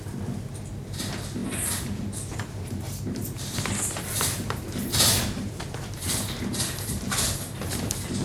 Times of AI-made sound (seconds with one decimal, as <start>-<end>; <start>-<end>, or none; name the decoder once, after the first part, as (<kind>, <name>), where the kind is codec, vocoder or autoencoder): 1.4-5.6 (vocoder, BigVGAN v2)